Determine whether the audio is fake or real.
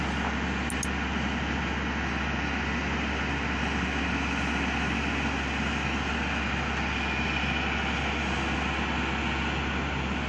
real